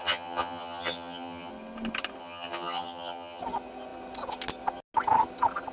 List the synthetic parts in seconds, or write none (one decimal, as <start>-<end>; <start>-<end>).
0.0-1.5; 2.2-3.4

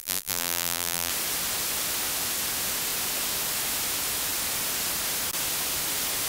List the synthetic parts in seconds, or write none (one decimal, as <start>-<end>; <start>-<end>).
0.0-1.1